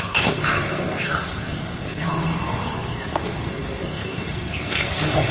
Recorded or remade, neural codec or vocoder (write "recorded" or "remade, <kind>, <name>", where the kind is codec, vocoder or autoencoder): remade, codec, SNAC